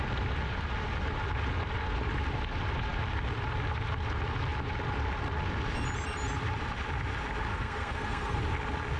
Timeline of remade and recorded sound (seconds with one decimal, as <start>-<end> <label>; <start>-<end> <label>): 0.0-7.5 recorded; 7.5-8.4 remade; 8.4-9.0 recorded